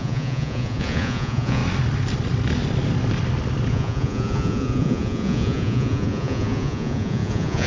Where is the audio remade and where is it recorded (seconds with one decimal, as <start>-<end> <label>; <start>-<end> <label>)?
0.0-1.6 remade; 1.6-3.7 recorded; 3.7-7.7 remade